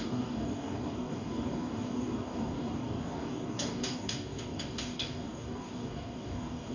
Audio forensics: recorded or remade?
remade